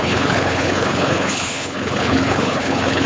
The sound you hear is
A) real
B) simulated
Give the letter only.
B